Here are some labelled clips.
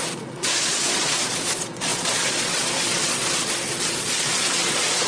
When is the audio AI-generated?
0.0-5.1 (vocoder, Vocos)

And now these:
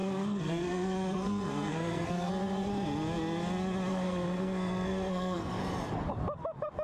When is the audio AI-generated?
0.0-2.3 (codec, SNAC); 3.9-5.5

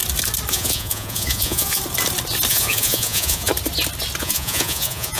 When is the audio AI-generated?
0.5-1.8 (vocoder, Vocos); 2.5-3.5; 4.2-5.2

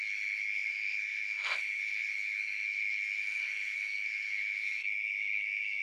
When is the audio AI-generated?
0.0-5.8 (codec, SNAC)

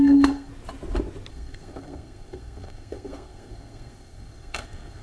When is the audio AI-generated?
0.0-0.5 (codec, SNAC); 1.3-5.0

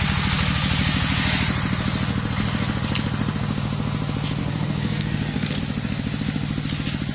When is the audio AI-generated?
4.4-5.6 (codec, SNAC)